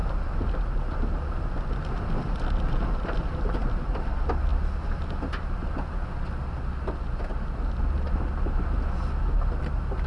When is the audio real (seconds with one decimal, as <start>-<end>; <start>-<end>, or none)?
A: 0.0-10.1

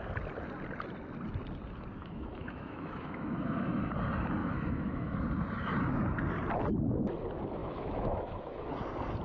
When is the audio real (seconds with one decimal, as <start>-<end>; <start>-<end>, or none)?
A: 0.0-2.0; 3.8-4.4; 5.2-7.6; 8.7-9.2

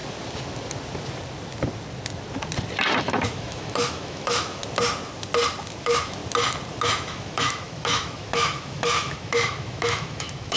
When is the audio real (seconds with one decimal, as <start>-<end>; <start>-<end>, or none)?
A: 0.0-3.0; 4.6-5.8; 6.2-6.8

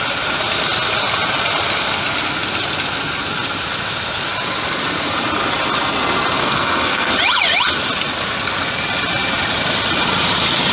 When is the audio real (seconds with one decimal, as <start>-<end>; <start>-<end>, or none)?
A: 0.0-6.4; 7.1-10.7

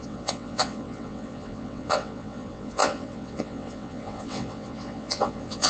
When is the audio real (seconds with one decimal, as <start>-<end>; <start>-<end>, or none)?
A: none